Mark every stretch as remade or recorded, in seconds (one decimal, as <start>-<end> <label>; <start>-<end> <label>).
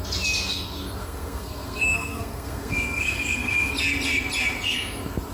0.0-1.0 recorded; 1.0-3.7 remade; 3.7-5.3 recorded